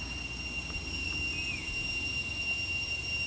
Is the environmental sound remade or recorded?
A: recorded